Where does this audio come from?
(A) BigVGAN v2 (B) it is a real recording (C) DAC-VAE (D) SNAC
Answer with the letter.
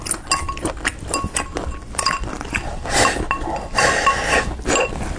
B